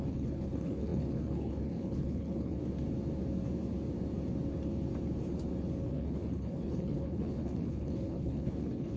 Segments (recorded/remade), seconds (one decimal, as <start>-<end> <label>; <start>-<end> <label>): 0.0-2.6 remade; 2.6-5.8 recorded; 5.8-9.0 remade